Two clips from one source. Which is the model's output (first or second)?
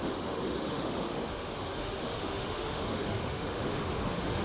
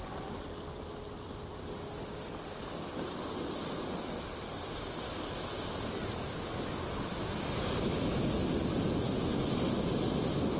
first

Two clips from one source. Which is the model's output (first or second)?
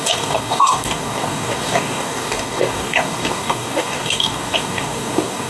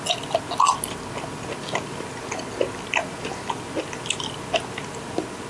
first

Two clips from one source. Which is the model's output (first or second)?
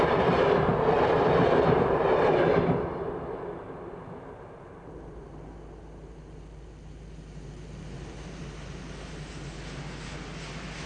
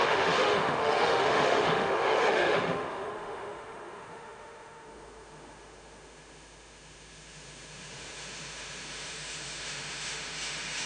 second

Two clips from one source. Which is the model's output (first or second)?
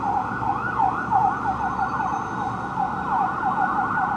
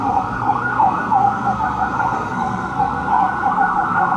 second